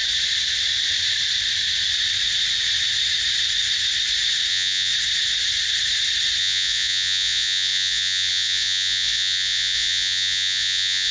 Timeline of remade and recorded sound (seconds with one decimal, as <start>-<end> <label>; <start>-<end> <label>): 0.0-4.5 recorded; 4.5-4.9 remade; 4.9-6.4 recorded; 6.4-11.1 remade